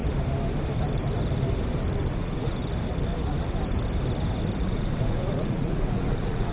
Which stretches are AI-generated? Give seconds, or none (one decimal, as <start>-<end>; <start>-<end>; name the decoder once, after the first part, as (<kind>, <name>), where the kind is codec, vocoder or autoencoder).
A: 2.1-2.6 (vocoder, Vocos); 4.7-6.5